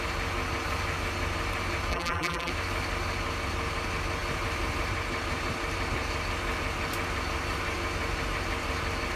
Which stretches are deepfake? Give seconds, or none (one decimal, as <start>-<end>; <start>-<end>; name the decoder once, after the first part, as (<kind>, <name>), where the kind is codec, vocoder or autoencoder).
1.9-2.5 (vocoder, BigVGAN v2)